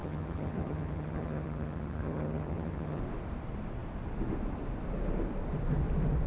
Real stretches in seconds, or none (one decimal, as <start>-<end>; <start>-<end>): 3.0-6.3